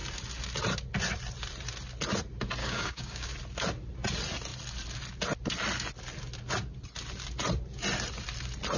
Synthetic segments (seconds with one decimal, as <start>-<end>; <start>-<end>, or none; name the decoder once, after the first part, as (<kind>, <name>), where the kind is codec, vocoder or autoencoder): 2.6-3.3 (codec, DAC)

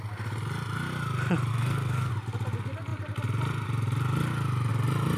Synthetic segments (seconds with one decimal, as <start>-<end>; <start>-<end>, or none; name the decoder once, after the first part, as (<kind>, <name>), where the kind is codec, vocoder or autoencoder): 1.5-2.1 (codec, SNAC)

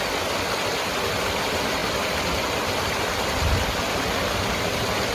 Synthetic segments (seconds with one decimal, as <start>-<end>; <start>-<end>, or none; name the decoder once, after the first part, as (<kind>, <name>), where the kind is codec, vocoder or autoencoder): none

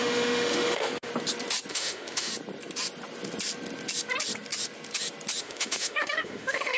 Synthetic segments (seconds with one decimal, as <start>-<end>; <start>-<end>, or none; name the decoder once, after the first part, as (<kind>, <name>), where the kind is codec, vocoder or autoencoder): 0.0-1.1 (autoencoder, DAC-VAE); 1.7-2.3; 5.4-6.8

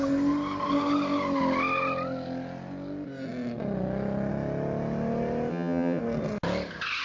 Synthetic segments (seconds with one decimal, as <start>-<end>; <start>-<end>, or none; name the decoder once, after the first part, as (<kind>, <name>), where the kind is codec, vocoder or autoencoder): 5.5-6.0 (vocoder, HiFi-GAN)

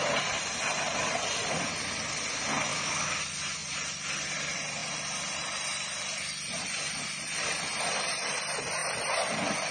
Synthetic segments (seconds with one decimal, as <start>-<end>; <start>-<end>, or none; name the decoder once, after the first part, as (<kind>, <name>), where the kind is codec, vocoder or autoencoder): 2.7-3.2 (codec, DAC)